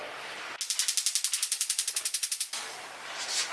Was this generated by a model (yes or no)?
no